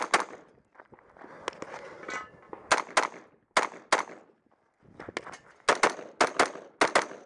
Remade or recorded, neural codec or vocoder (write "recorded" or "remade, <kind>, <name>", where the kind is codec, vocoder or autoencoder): recorded